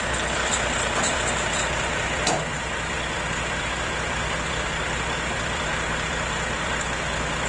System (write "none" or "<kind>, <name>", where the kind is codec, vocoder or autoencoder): vocoder, BigVGAN v2